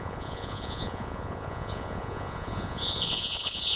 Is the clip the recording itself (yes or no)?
no